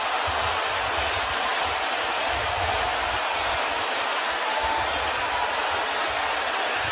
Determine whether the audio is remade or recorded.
recorded